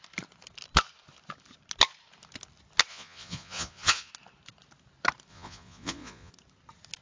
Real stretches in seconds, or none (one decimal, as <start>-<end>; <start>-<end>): 0.0-2.9; 4.1-5.3; 6.3-7.0